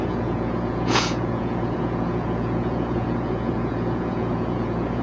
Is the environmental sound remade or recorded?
remade